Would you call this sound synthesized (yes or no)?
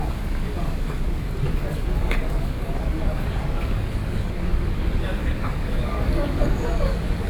yes